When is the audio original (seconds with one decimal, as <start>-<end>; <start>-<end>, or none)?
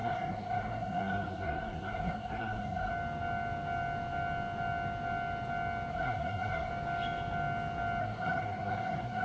2.9-5.9; 6.7-8.0